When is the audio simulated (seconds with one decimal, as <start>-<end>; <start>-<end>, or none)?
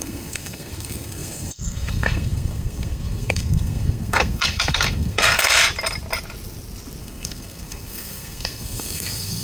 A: 0.0-5.6; 7.0-9.4